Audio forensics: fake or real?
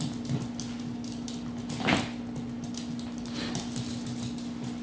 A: real